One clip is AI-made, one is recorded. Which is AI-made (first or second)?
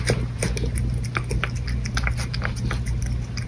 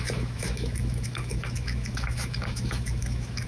second